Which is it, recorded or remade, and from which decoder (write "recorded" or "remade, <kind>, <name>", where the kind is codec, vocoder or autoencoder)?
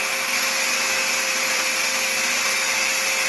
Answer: recorded